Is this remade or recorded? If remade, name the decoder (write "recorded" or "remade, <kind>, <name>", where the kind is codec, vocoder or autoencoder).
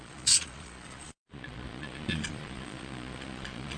remade, vocoder, Vocos